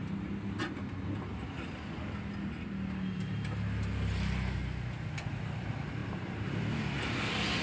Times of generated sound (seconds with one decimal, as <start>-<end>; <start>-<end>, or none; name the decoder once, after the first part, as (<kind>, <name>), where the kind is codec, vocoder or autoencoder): 6.0-6.6 (vocoder, BigVGAN v2)